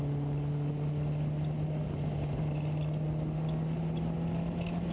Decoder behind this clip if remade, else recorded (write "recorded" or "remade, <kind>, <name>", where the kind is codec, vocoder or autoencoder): recorded